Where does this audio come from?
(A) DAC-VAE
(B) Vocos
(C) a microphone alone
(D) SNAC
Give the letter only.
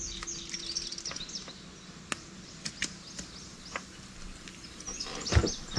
C